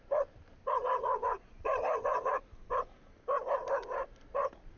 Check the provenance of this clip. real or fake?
real